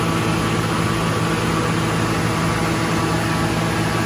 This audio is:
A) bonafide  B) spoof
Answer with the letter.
A